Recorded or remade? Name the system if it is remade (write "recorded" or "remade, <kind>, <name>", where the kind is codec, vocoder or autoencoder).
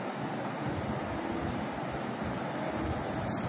recorded